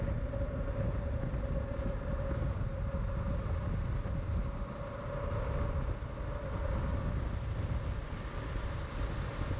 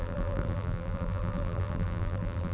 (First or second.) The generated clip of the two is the second